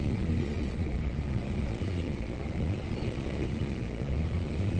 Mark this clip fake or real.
fake